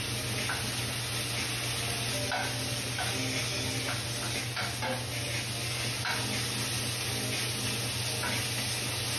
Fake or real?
real